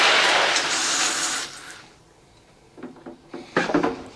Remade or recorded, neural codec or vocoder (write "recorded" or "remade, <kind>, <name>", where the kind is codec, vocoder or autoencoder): recorded